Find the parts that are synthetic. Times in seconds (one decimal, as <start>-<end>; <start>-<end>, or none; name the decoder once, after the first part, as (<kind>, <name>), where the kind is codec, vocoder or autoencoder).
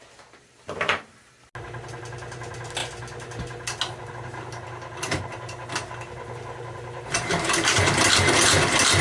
none